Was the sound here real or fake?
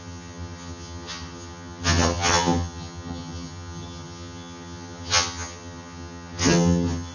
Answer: fake